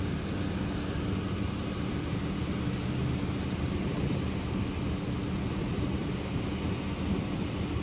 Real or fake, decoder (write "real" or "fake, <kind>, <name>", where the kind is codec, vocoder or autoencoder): real